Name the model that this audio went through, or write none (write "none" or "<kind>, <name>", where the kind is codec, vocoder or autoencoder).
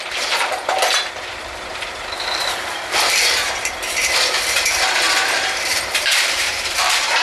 vocoder, BigVGAN v2